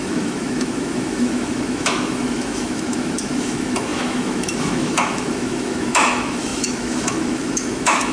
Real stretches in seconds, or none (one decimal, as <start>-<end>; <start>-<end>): none